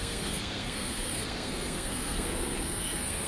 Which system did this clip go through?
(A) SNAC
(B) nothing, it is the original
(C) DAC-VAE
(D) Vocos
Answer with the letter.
A